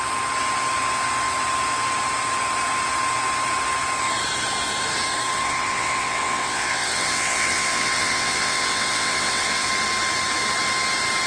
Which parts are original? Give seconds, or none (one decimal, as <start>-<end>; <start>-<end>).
0.0-5.3; 9.7-11.3